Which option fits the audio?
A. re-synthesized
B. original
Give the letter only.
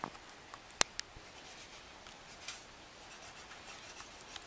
B